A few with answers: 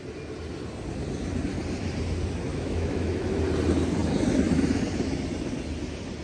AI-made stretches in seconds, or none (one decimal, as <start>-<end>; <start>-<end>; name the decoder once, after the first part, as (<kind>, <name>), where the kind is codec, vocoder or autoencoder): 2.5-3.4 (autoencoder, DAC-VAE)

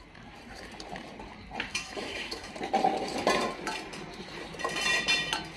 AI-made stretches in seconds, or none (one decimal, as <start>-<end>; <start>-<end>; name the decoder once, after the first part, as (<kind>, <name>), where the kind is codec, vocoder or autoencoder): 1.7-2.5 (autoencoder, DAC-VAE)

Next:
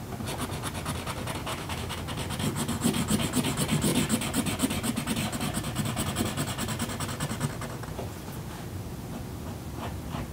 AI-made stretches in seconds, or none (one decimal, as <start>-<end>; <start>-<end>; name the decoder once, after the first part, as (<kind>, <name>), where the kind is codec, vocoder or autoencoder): 1.5-2.0 (autoencoder, DAC-VAE)

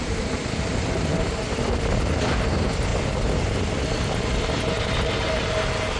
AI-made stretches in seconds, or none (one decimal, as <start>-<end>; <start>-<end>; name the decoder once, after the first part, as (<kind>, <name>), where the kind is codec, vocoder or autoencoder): none

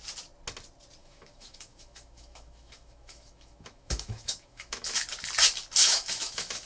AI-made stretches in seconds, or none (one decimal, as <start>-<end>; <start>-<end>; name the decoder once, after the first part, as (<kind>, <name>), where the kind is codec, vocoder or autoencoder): 1.0-5.0 (autoencoder, DAC-VAE); 5.8-6.7

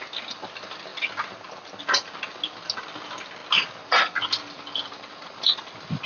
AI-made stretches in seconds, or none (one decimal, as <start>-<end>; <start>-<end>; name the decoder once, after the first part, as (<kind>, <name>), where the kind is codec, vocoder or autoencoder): none